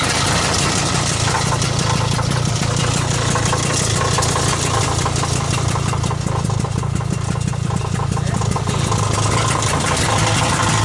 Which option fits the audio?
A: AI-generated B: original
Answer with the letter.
B